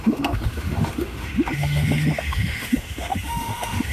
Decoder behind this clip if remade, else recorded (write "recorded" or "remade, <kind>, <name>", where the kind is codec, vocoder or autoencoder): remade, autoencoder, DAC-VAE